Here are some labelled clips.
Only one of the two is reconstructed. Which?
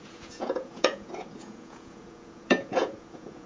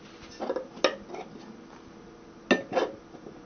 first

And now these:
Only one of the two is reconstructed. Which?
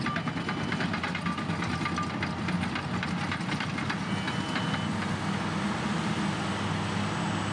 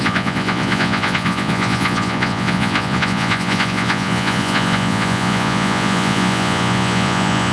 second